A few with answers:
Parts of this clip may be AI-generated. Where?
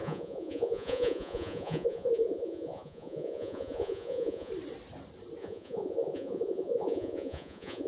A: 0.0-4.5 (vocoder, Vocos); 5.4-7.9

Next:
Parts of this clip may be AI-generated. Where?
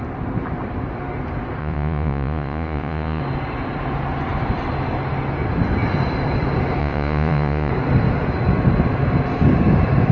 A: 1.6-3.2 (vocoder, Vocos); 6.8-7.7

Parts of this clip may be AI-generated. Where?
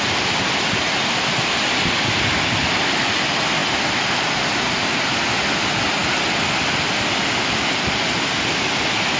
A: none